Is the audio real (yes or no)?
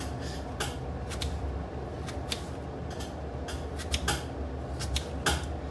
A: yes